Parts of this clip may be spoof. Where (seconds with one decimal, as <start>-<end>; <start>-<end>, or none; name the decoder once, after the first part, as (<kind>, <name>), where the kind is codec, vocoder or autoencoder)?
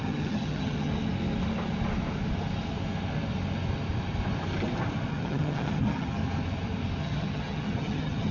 0.0-0.9 (vocoder, HiFi-GAN); 5.1-6.2; 7.0-8.3